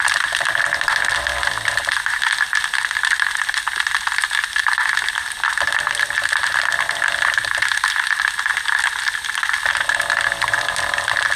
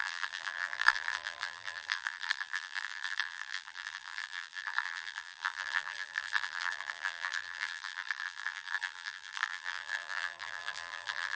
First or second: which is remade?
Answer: second